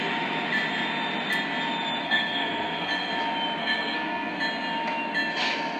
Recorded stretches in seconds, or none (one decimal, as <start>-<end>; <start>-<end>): 0.0-2.0; 3.1-3.6; 4.4-5.8